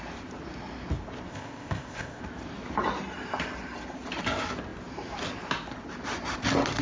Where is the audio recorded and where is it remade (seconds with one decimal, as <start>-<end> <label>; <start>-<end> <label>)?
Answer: 0.0-1.3 recorded; 1.3-2.2 remade; 2.2-6.8 recorded